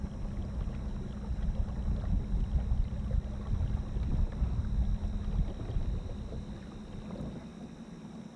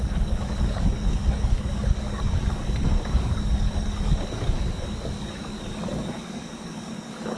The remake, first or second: second